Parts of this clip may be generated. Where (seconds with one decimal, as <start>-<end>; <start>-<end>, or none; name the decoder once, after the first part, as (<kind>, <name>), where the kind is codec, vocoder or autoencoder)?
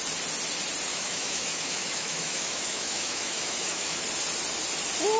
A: 0.9-4.0 (autoencoder, DAC-VAE)